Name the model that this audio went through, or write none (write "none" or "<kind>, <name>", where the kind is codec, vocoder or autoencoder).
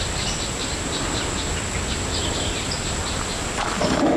none